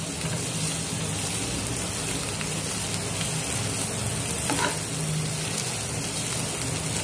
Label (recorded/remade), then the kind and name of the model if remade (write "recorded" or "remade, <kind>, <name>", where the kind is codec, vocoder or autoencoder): recorded